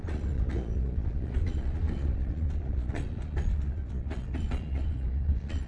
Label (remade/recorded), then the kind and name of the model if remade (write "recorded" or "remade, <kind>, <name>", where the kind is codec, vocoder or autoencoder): remade, vocoder, Vocos